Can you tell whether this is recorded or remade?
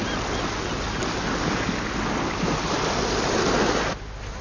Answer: recorded